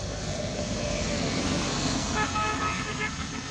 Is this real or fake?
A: fake